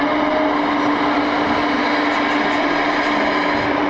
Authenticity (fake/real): real